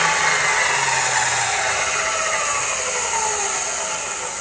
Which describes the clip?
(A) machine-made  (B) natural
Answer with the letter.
B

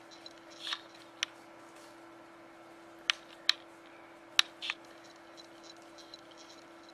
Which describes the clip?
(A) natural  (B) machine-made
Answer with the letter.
A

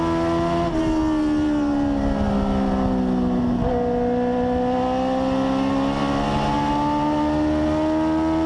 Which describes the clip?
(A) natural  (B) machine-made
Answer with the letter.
A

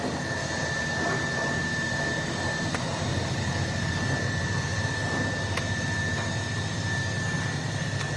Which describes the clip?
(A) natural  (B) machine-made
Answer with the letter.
A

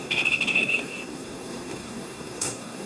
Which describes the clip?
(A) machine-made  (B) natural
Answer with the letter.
A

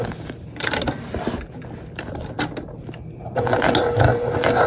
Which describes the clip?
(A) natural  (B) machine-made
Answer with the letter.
A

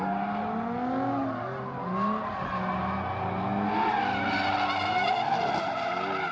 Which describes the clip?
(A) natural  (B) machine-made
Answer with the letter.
A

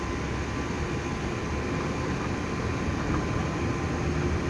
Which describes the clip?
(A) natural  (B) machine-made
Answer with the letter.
A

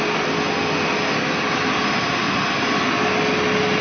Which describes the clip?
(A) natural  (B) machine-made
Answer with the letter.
A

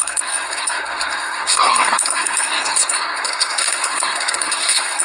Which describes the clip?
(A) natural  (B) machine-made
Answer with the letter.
B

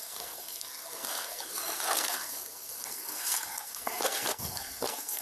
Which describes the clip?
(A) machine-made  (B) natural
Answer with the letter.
A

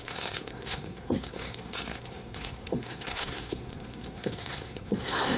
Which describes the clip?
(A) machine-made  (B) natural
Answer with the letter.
A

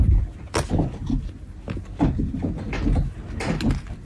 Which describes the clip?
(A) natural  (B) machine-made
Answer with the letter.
A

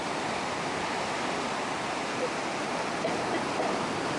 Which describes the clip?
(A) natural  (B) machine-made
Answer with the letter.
A